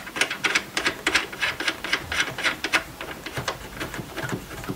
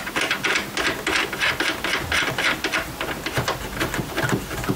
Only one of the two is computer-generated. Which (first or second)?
first